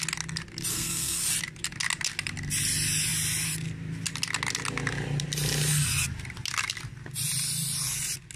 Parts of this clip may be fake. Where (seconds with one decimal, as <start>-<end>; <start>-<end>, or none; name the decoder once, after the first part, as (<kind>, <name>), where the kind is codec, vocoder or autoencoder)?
0.7-1.2 (codec, SNAC)